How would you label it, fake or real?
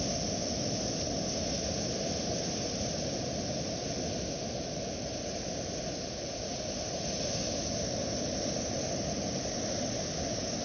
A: real